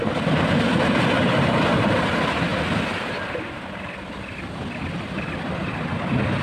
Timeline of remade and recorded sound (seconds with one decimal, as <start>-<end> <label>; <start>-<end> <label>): 0.0-6.4 recorded